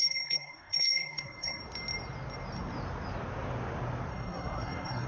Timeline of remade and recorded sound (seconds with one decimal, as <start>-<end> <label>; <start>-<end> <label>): 0.0-1.6 remade; 1.6-4.1 recorded; 4.1-5.1 remade